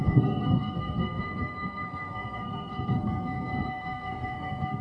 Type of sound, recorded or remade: remade